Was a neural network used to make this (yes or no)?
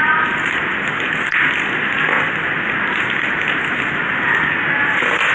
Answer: no